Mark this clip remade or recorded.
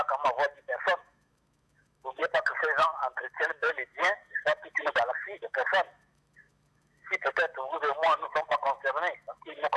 remade